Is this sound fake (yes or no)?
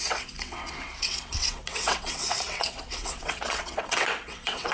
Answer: yes